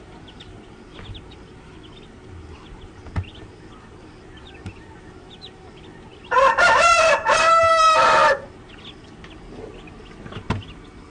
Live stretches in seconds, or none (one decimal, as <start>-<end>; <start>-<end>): 0.0-11.1